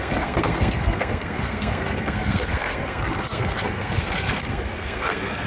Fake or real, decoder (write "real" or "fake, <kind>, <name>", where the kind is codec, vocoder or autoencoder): fake, codec, SNAC